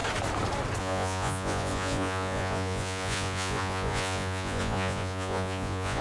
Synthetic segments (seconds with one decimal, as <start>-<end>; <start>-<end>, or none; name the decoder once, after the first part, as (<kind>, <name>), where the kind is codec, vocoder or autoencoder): 0.8-6.0 (vocoder, Vocos)